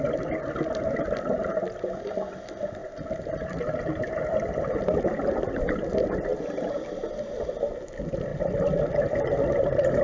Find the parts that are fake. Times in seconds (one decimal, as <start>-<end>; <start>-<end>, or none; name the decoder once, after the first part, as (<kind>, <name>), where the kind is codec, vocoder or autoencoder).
none